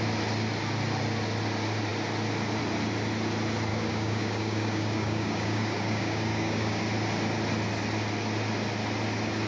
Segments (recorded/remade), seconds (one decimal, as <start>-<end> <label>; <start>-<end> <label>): 0.0-3.7 recorded; 3.7-6.8 remade; 6.8-9.5 recorded